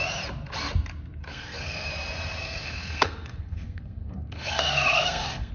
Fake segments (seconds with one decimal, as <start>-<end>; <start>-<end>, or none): 1.3-1.9; 2.4-5.5